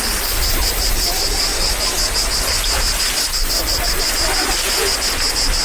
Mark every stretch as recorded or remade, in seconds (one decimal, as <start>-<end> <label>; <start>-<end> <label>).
0.0-5.6 recorded